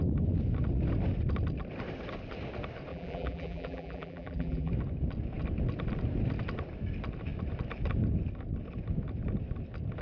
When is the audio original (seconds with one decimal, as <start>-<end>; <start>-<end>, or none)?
0.0-2.9; 4.7-10.0